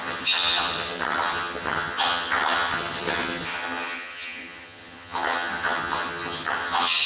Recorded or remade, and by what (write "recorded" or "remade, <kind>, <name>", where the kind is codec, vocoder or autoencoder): remade, vocoder, HiFi-GAN